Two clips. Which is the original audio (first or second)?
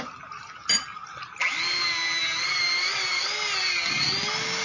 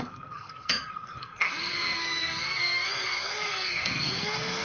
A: first